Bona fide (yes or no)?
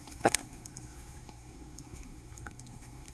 no